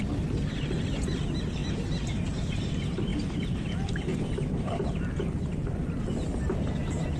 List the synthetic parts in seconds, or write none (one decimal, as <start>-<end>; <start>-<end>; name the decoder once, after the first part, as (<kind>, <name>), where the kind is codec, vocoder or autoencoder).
none